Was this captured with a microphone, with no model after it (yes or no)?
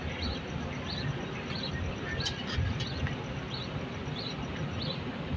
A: yes